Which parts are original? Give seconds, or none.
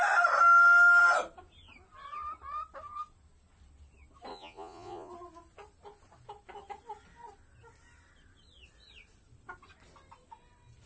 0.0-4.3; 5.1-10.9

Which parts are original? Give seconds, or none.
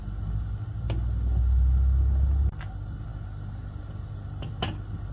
0.0-5.1